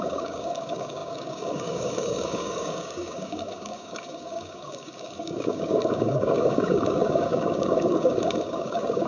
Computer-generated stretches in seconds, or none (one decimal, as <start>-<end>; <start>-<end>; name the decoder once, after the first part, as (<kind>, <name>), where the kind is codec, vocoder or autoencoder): 0.0-9.1 (codec, DAC)